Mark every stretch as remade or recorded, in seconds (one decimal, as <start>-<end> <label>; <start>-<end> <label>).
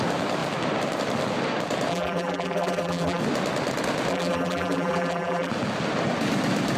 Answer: 0.0-1.9 recorded; 1.9-3.2 remade; 3.2-4.1 recorded; 4.1-5.5 remade; 5.5-6.8 recorded